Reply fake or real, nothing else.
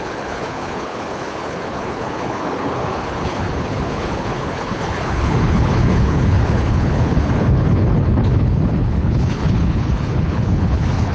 fake